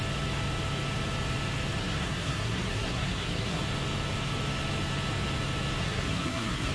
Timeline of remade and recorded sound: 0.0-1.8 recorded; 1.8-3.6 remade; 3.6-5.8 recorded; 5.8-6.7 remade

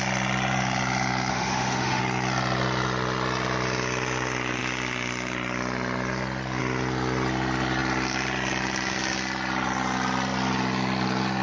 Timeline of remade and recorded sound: 0.0-1.3 recorded; 1.3-2.0 remade; 2.0-11.4 recorded

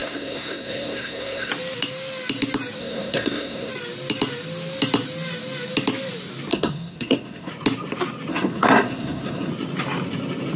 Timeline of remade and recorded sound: 0.0-1.5 remade; 1.5-2.8 recorded; 2.8-3.7 remade; 3.7-6.5 recorded; 6.5-7.5 remade; 7.5-8.3 recorded; 8.3-9.5 remade; 9.5-10.6 recorded